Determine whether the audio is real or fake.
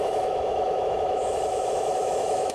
fake